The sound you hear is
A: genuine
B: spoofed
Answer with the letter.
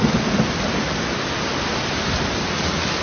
A